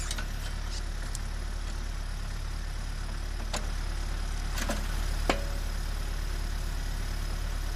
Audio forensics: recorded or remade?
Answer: recorded